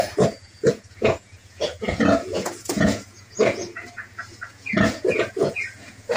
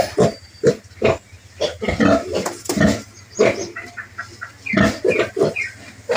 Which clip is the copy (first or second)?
first